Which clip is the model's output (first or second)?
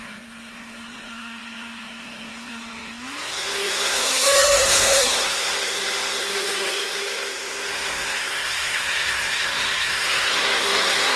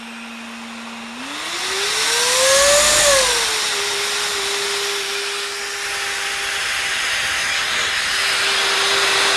first